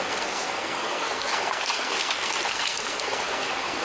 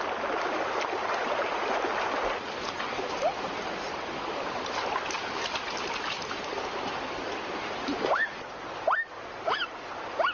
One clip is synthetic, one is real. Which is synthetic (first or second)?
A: first